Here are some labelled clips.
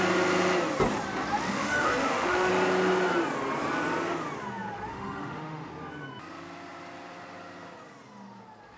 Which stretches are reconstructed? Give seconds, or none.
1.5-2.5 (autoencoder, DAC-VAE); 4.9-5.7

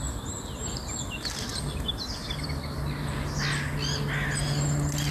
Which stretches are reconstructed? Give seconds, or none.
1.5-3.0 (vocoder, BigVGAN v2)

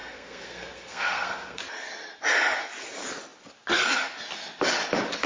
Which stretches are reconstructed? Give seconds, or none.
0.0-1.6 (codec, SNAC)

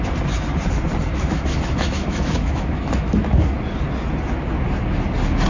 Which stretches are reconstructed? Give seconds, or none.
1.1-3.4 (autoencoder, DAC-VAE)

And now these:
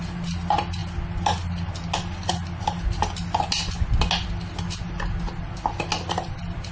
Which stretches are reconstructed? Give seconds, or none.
none